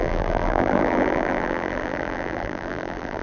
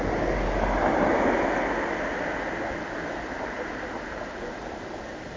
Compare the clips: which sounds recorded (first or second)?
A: second